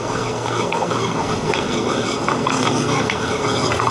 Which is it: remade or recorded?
remade